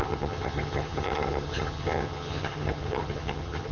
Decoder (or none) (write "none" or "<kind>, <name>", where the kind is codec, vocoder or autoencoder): vocoder, HiFi-GAN